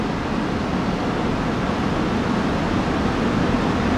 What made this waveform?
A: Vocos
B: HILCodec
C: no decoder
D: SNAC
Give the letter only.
C